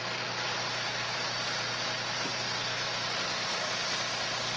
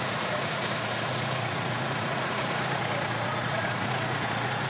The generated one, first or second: second